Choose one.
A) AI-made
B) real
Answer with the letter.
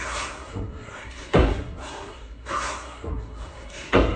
A